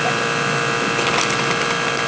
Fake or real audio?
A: real